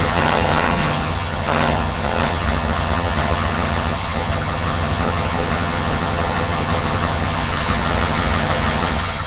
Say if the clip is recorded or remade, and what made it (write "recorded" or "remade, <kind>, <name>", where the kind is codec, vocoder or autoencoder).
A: remade, vocoder, HiFi-GAN